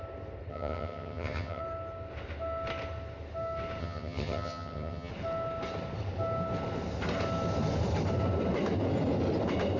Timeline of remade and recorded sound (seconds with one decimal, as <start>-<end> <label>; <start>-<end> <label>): 0.0-0.5 recorded; 0.5-1.6 remade; 1.6-3.8 recorded; 3.8-5.1 remade; 5.1-9.8 recorded